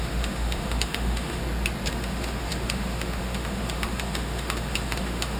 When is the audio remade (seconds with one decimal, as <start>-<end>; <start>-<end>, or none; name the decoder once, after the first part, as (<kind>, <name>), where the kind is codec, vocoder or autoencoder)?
0.0-1.4 (autoencoder, DAC-VAE); 1.9-5.4